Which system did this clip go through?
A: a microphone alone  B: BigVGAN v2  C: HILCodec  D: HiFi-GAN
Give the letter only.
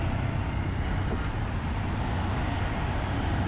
A